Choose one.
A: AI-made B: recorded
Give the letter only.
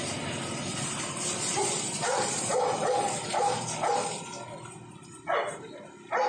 B